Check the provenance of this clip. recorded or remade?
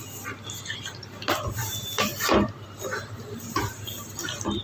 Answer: recorded